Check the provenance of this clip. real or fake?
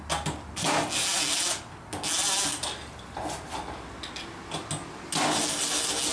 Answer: real